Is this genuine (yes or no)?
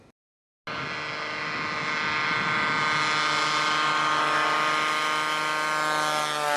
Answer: yes